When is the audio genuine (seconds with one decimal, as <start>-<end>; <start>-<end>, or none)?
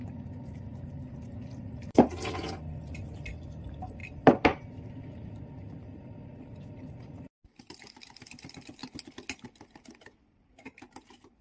0.0-0.7; 2.2-4.0; 7.6-11.4